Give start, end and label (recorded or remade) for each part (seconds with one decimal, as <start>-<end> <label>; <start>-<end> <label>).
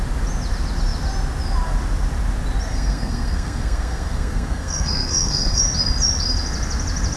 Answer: 0.0-2.7 recorded; 2.7-5.6 remade; 5.6-7.2 recorded